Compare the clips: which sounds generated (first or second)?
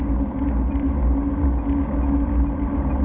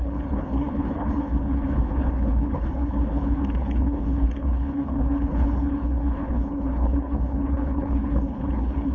second